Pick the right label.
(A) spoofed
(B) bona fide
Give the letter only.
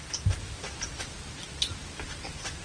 B